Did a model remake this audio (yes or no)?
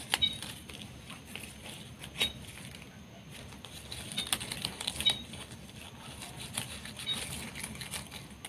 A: no